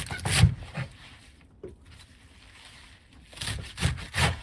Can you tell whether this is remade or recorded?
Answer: recorded